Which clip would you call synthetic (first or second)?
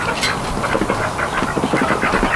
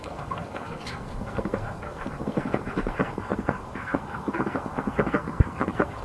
second